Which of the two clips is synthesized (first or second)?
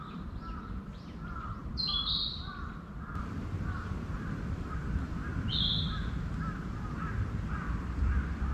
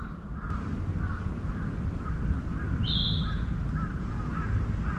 first